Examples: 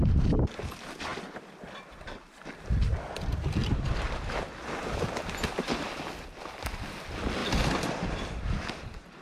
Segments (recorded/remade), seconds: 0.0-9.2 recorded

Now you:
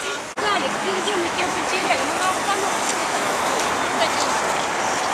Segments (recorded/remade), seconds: 0.0-0.8 recorded; 0.8-1.9 remade; 1.9-3.0 recorded; 3.0-3.7 remade; 3.7-5.1 recorded

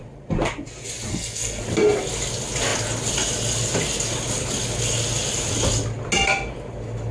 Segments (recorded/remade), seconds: 0.0-1.1 recorded; 1.1-1.6 remade; 1.6-7.1 recorded

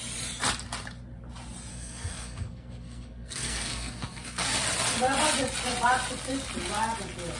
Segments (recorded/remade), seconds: 0.0-1.7 recorded; 1.7-4.6 remade; 4.6-7.4 recorded

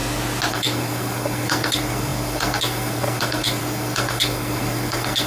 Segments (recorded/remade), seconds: 0.0-0.5 recorded; 0.5-5.3 remade

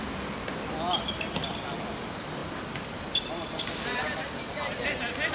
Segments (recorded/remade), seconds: 0.0-5.3 recorded

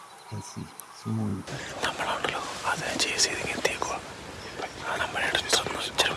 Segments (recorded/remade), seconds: 0.0-6.2 recorded